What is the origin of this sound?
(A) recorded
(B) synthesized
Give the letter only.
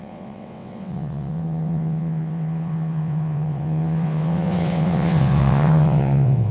B